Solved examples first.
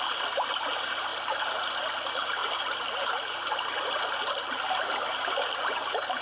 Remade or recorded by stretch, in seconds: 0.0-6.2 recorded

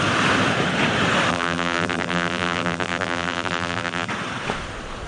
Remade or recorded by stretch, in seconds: 0.0-1.3 recorded; 1.3-4.1 remade; 4.1-5.1 recorded

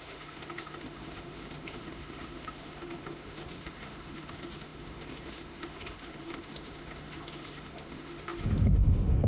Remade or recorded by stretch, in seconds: 0.0-9.3 remade

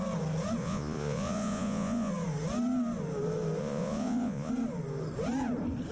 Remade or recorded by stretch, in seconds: 0.0-0.6 recorded; 0.6-2.1 remade; 2.1-3.6 recorded; 3.6-4.5 remade; 4.5-5.9 recorded

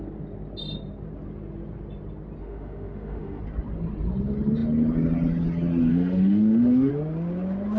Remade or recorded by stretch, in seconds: 0.0-2.4 recorded; 2.4-3.4 remade; 3.4-5.9 recorded; 5.9-6.9 remade; 6.9-7.8 recorded

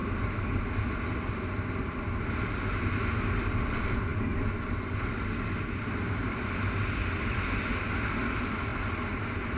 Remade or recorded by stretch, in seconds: 0.0-9.6 recorded

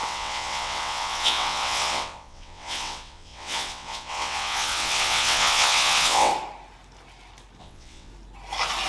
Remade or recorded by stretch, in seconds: 0.0-6.3 remade; 6.3-7.6 recorded; 7.6-8.1 remade; 8.1-8.9 recorded

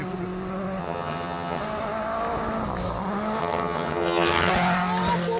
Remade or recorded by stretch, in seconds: 0.0-0.8 recorded; 0.8-1.6 remade; 1.6-3.4 recorded; 3.4-4.5 remade; 4.5-5.4 recorded